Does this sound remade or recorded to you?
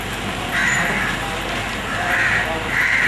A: recorded